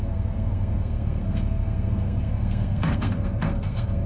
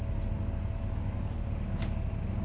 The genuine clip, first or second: second